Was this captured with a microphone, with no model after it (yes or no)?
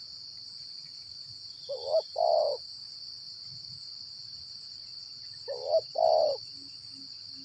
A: yes